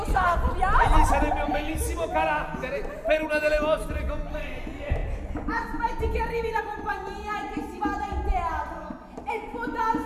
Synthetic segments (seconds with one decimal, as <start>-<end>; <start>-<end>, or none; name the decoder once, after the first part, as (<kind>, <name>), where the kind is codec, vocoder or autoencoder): none